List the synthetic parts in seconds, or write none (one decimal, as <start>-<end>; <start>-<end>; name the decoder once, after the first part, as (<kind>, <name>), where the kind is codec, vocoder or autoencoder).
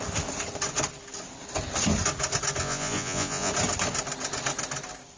2.6-3.5 (vocoder, Vocos)